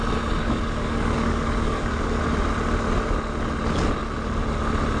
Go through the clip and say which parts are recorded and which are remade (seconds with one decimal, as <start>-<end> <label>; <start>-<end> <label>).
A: 0.0-0.4 recorded; 0.4-2.2 remade; 2.2-5.0 recorded

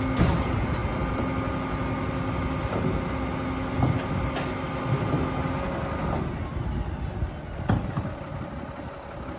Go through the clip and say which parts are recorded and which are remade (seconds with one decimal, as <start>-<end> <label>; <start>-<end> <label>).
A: 0.0-9.4 recorded